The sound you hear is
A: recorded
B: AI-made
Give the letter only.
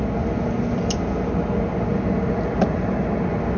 A